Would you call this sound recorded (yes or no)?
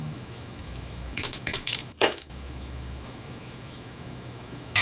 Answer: no